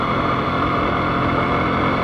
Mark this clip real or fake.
real